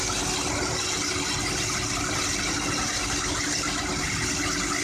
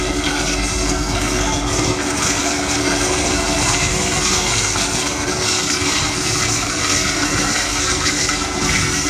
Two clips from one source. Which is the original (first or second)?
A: first